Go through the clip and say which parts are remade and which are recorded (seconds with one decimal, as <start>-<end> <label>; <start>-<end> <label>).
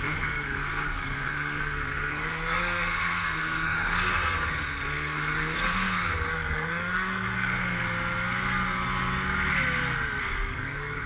0.0-7.8 remade; 7.8-10.2 recorded; 10.2-11.1 remade